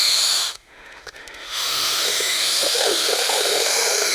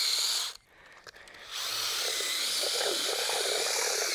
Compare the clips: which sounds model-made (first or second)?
first